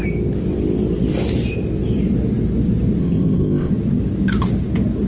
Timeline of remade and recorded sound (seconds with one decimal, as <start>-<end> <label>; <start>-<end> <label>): 0.0-3.0 recorded; 3.0-3.7 remade; 3.7-5.1 recorded